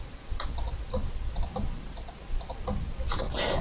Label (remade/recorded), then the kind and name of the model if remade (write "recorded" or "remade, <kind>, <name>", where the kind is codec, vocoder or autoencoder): recorded